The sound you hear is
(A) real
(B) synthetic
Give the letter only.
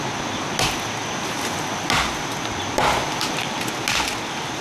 A